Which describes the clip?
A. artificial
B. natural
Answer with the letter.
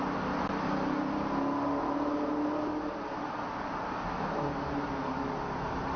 B